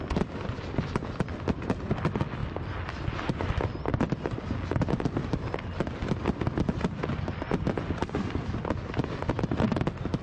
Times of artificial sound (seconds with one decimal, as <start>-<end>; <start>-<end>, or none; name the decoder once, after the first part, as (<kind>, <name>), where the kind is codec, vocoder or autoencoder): none